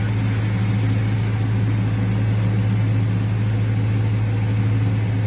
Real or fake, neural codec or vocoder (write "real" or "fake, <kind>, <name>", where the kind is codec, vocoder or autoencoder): real